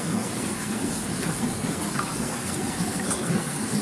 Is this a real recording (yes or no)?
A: no